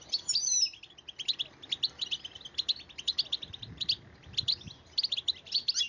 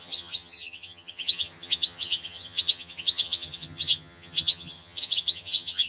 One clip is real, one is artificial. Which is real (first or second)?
first